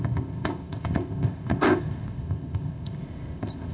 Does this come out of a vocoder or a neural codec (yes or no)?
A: yes